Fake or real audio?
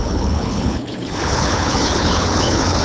fake